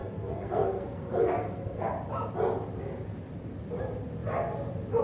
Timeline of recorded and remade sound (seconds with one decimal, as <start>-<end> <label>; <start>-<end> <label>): 0.0-1.9 remade; 1.9-5.0 recorded